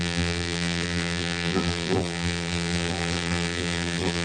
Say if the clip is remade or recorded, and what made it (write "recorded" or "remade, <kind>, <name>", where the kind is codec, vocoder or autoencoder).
remade, vocoder, BigVGAN v2